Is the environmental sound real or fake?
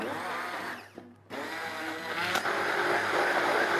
real